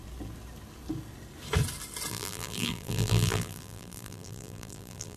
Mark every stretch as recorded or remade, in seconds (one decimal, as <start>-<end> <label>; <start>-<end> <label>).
0.0-2.1 recorded; 2.1-5.2 remade

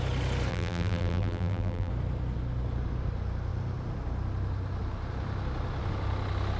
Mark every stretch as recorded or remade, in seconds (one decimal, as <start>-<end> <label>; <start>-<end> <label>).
0.0-0.5 recorded; 0.5-1.9 remade; 1.9-6.6 recorded

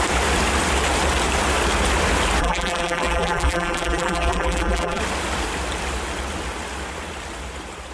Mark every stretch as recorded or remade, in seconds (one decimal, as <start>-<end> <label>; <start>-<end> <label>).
0.0-2.4 recorded; 2.4-5.0 remade; 5.0-7.9 recorded